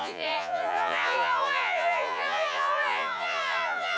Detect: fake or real fake